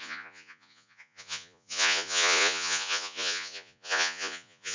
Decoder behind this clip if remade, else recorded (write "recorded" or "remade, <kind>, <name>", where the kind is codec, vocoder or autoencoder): remade, vocoder, Vocos